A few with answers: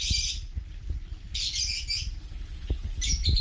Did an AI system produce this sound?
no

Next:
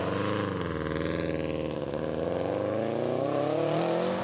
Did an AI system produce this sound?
no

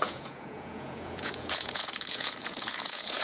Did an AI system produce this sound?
yes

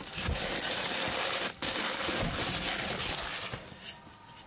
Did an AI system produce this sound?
no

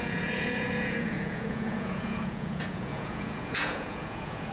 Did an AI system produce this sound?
yes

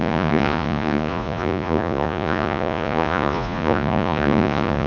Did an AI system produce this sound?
yes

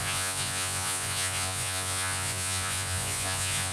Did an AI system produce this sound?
yes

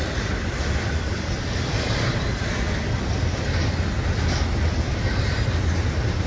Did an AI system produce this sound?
no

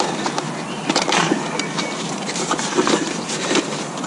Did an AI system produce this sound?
no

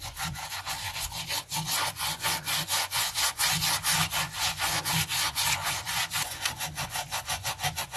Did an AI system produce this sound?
yes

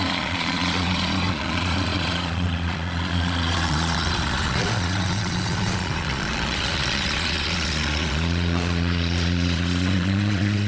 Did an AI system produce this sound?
yes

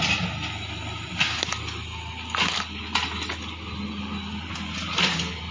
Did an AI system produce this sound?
no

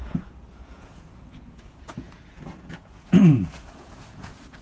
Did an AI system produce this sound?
yes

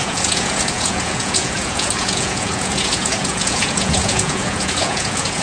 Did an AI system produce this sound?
yes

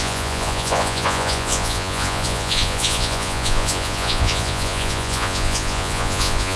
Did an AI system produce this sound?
yes